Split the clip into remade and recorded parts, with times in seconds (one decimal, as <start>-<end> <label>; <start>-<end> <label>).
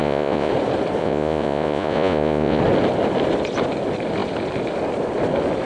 0.0-0.5 remade; 0.5-1.0 recorded; 1.0-2.6 remade; 2.6-5.7 recorded